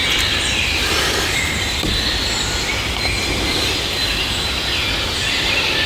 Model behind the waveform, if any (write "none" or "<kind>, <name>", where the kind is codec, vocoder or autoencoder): none